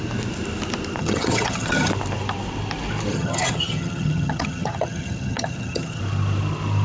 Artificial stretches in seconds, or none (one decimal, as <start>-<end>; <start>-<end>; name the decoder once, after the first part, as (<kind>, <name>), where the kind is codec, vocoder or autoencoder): 1.0-1.9 (vocoder, HiFi-GAN); 3.1-6.0